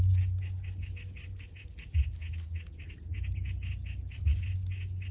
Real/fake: real